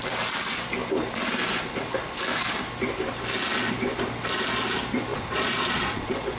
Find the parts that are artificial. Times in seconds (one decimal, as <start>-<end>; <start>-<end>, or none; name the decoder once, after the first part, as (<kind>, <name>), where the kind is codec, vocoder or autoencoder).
5.1-6.4 (vocoder, Vocos)